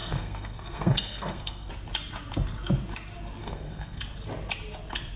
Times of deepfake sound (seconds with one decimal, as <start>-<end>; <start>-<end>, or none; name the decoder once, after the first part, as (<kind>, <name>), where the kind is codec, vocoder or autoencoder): 0.0-1.7 (codec, SNAC); 3.4-4.0